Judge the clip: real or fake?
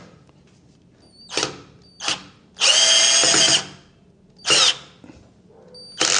real